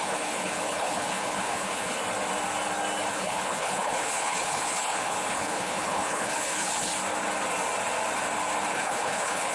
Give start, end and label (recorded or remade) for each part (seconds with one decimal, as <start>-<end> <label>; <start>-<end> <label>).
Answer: 0.0-2.0 remade; 2.0-3.1 recorded; 3.1-6.9 remade; 6.9-8.7 recorded; 8.7-9.5 remade